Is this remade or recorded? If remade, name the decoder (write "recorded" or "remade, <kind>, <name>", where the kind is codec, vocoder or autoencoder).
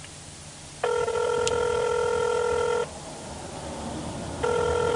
recorded